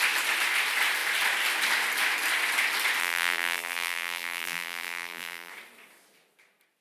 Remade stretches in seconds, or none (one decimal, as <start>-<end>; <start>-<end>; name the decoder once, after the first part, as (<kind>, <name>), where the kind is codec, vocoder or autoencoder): 3.0-5.5 (vocoder, BigVGAN v2)